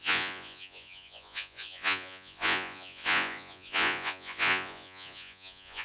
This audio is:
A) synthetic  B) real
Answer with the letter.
A